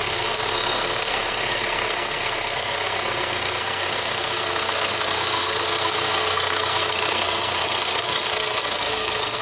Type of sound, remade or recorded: remade